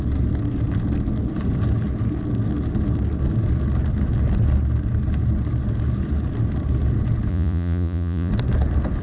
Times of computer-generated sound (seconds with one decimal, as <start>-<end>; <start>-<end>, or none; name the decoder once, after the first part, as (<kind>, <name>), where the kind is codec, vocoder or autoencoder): 7.3-8.3 (vocoder, Vocos)